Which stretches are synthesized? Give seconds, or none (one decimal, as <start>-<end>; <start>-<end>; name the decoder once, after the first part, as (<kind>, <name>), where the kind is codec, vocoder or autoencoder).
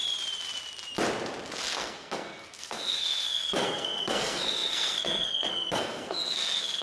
1.6-6.8 (codec, SNAC)